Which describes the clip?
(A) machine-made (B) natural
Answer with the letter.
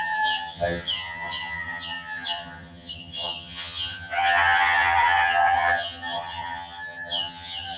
A